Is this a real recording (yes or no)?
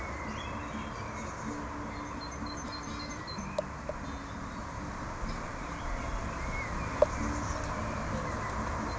yes